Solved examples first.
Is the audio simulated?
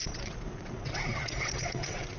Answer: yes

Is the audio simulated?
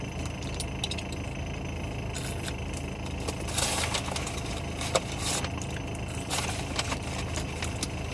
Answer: no